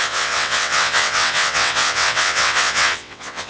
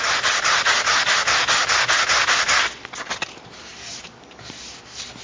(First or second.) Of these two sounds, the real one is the second